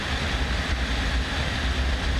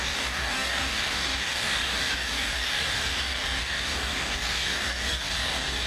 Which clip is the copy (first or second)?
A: second